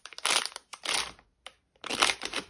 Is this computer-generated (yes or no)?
no